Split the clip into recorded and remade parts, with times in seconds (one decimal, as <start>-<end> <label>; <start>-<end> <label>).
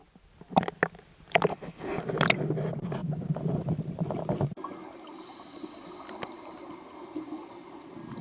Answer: 0.0-1.5 recorded; 1.5-2.0 remade; 2.0-8.2 recorded